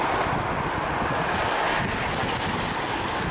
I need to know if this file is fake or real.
real